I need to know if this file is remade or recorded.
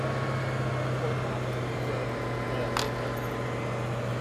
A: recorded